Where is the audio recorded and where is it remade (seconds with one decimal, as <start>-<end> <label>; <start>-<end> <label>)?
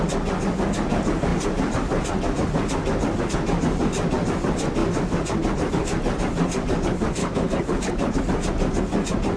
0.0-7.2 recorded; 7.2-8.2 remade; 8.2-9.4 recorded